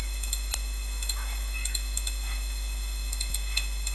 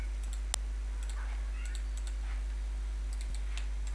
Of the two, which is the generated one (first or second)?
first